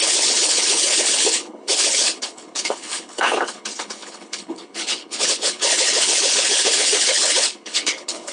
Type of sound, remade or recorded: remade